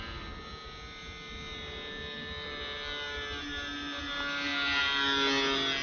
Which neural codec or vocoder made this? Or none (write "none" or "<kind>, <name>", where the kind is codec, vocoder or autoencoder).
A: none